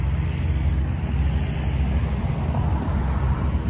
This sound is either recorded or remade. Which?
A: recorded